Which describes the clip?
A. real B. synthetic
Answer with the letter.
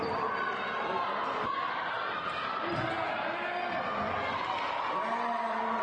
A